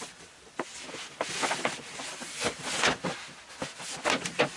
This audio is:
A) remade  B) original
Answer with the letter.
B